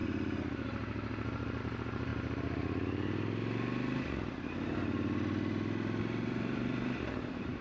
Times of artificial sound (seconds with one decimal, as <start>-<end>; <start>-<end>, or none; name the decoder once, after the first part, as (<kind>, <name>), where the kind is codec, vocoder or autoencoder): 1.6-2.1 (vocoder, BigVGAN v2); 6.0-7.6